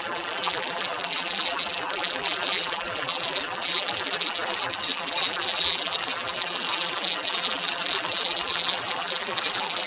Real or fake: fake